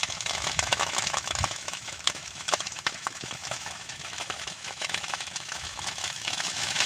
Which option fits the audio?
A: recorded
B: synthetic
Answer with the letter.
B